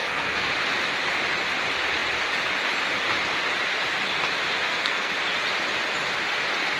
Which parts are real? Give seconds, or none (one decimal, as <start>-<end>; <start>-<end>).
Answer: 0.5-4.6; 5.1-6.8